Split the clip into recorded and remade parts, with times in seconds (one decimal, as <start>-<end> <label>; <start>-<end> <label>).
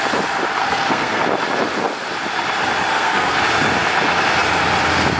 0.0-0.6 recorded; 0.6-1.2 remade; 1.2-2.9 recorded; 2.9-3.4 remade; 3.4-5.2 recorded